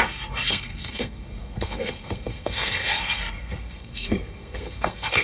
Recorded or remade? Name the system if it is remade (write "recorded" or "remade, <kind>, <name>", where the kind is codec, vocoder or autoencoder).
remade, codec, SNAC